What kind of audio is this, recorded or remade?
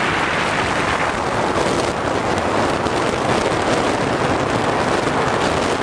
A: recorded